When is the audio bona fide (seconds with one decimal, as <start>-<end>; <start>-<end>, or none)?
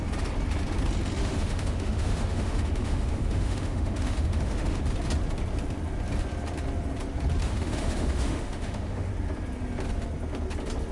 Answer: 0.0-1.2; 4.8-7.4; 9.1-10.9